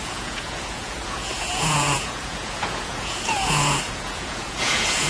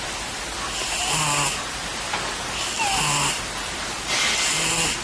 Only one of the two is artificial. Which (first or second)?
first